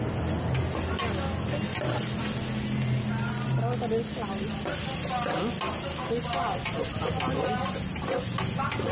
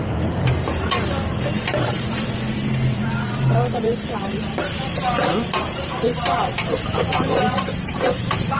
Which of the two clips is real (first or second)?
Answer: first